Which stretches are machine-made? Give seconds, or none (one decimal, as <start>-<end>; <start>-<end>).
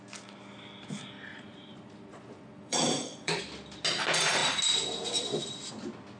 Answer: 1.3-3.4